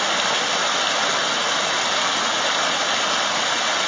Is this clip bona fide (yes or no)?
yes